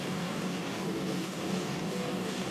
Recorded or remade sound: remade